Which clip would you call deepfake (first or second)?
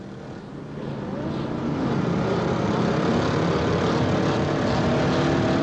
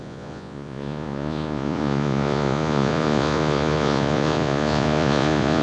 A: second